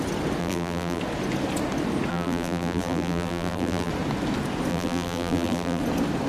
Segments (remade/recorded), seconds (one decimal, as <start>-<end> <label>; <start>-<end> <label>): 0.0-0.4 recorded; 0.4-1.0 remade; 1.0-2.1 recorded; 2.1-3.9 remade; 3.9-4.7 recorded; 4.7-5.8 remade; 5.8-6.3 recorded